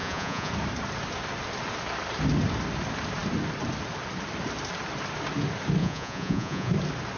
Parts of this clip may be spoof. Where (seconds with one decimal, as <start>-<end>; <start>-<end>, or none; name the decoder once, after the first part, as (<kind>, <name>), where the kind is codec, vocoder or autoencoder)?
0.0-0.5 (vocoder, Vocos); 5.8-6.7